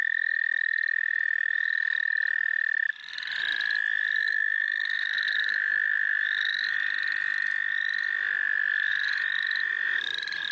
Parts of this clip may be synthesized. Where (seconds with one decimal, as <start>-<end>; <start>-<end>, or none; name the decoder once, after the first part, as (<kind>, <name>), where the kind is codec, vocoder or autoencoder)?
4.2-6.7 (autoencoder, DAC-VAE)

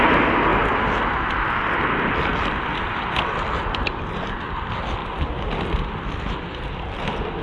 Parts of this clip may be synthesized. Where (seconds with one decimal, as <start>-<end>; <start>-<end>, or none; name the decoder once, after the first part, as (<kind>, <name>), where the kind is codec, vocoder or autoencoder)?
none